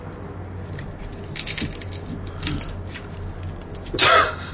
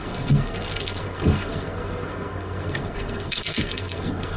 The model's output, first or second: second